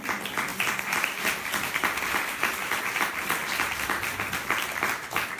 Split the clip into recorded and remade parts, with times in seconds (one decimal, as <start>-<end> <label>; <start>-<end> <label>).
0.0-5.4 recorded